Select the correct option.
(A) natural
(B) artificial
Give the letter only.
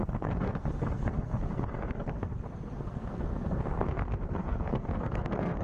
B